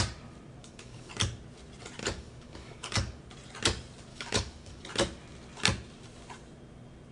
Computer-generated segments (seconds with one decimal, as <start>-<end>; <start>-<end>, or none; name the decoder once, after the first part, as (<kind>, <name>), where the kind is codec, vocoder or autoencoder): 0.6-1.1 (codec, DAC); 2.0-3.2; 4.1-4.8